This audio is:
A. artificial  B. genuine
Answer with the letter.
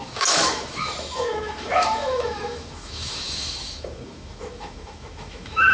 A